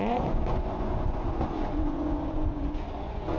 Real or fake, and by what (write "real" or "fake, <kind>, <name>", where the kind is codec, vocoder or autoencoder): fake, vocoder, Vocos